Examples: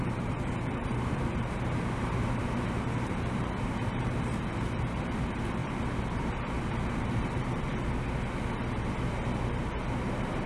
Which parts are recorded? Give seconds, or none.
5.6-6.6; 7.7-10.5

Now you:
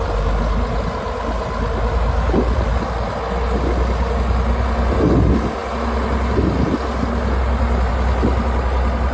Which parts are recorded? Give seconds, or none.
0.0-9.1